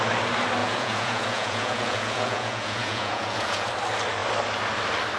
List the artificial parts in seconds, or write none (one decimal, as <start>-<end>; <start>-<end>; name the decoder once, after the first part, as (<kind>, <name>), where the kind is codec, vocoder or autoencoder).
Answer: 0.6-3.7 (vocoder, Vocos)